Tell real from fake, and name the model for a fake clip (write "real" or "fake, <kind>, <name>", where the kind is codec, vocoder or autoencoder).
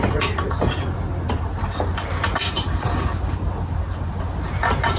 real